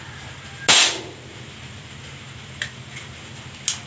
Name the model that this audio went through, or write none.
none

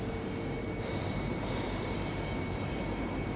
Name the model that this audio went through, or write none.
vocoder, BigVGAN v2